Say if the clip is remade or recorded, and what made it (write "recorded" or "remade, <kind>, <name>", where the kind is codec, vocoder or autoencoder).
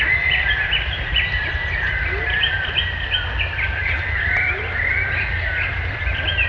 remade, vocoder, BigVGAN v2